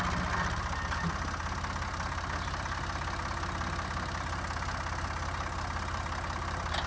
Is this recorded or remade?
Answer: recorded